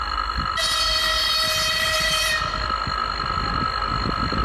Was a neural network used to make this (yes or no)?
no